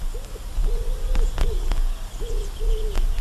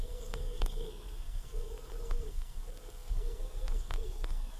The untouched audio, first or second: first